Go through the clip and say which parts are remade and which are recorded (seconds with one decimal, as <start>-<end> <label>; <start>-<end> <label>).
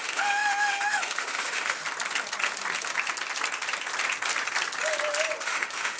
0.0-1.8 remade; 1.8-5.4 recorded; 5.4-6.0 remade